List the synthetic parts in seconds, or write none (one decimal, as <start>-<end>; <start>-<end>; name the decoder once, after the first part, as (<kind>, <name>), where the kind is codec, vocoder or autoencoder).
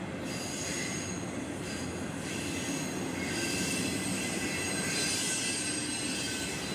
0.7-1.7 (vocoder, BigVGAN v2); 4.1-5.1